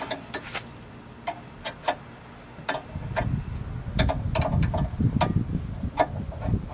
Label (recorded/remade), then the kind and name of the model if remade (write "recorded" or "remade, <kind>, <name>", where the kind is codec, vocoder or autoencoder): recorded